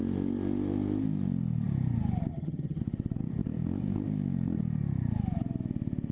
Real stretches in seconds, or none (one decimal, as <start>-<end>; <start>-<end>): 0.0-2.3; 2.8-6.1